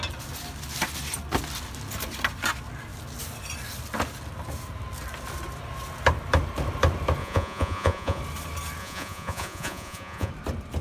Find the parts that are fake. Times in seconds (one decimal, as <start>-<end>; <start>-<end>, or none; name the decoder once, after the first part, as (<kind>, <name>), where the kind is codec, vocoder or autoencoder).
7.2-8.2 (vocoder, Vocos); 8.8-10.3